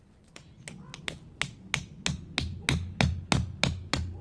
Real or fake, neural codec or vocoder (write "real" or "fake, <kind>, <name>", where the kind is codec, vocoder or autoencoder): real